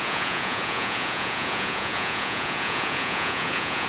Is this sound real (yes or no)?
no